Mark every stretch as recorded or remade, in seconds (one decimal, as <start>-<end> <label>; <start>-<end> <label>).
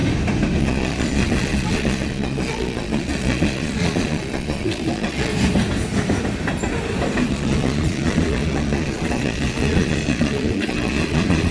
0.0-0.6 recorded; 0.6-5.3 remade; 5.3-7.3 recorded; 7.3-11.5 remade